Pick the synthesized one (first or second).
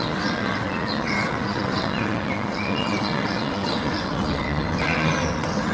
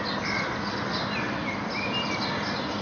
first